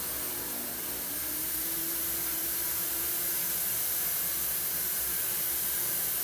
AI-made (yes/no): yes